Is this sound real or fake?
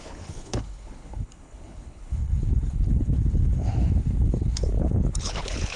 fake